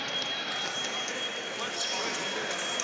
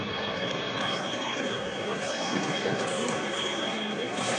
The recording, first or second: first